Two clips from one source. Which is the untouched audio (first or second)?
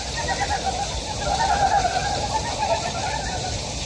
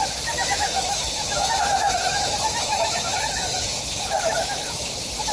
first